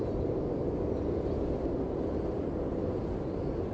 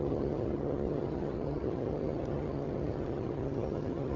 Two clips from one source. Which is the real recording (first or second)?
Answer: first